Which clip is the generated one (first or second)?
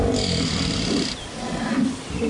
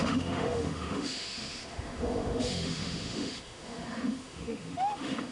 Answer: second